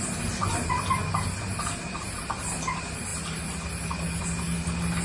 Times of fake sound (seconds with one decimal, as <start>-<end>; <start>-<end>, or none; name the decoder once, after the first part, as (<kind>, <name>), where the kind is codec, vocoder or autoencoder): none